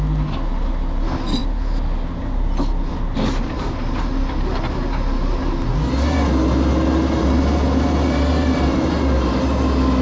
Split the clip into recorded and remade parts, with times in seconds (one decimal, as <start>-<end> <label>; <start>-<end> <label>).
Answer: 0.0-10.0 recorded